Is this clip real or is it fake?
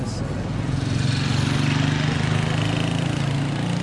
real